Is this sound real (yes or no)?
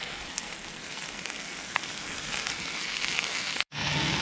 no